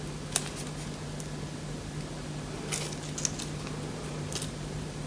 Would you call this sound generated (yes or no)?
no